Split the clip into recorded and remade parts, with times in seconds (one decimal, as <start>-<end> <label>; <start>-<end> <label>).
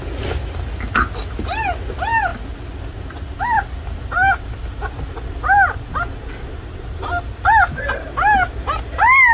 0.0-9.3 recorded